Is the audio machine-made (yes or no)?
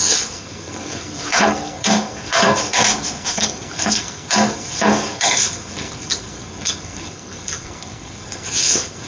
yes